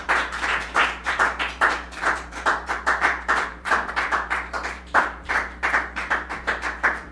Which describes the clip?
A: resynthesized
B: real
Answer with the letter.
A